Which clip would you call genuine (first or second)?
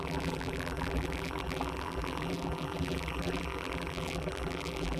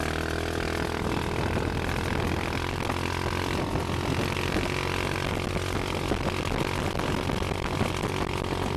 second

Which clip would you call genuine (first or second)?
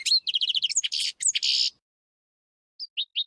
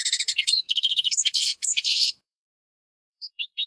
first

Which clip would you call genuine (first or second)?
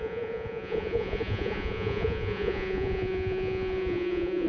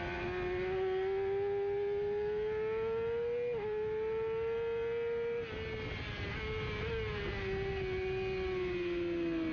second